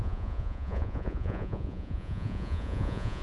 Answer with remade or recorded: remade